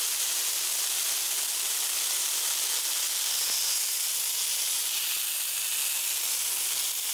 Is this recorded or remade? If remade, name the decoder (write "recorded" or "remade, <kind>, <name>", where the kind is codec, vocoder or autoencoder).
recorded